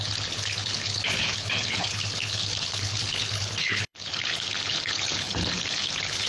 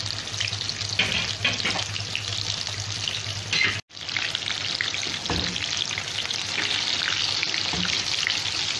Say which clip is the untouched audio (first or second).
second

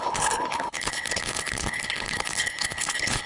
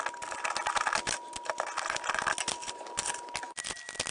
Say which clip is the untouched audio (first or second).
second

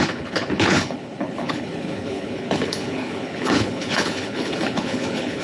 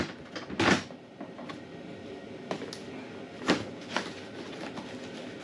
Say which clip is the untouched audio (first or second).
second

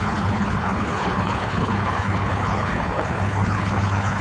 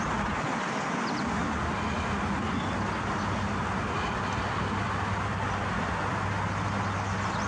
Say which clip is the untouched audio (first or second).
second